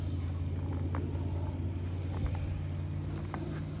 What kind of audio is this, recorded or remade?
recorded